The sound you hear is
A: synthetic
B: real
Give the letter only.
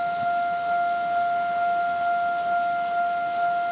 B